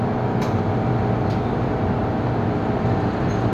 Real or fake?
real